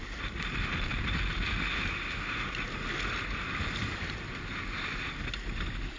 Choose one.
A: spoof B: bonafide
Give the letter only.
B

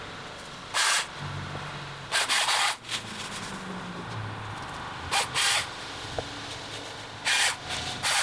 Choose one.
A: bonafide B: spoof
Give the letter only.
A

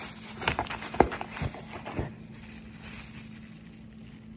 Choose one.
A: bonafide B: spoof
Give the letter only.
A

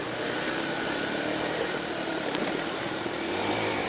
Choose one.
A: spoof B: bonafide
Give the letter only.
A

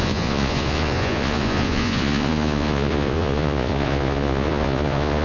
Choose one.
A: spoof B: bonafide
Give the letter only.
A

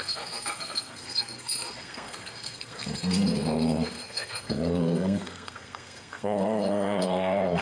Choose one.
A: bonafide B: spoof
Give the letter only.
B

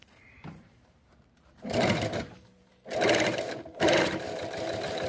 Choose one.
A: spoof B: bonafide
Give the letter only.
A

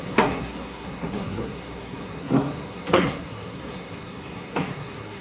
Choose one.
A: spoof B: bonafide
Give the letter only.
A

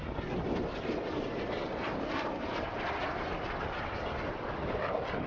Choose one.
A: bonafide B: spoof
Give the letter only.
B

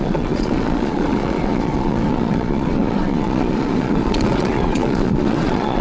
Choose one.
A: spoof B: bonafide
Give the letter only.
A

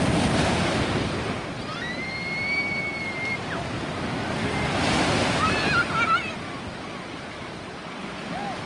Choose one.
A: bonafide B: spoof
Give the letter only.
A